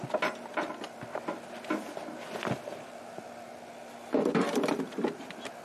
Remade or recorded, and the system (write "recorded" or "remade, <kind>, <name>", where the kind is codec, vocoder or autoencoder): recorded